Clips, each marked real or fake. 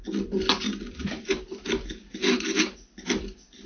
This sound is real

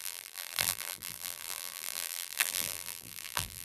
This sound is fake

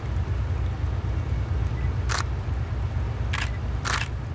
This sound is real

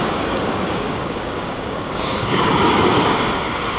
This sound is fake